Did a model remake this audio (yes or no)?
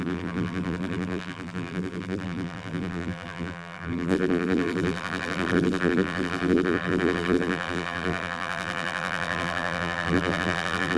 yes